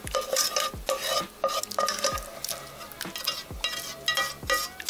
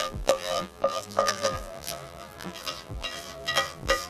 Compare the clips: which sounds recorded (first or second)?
first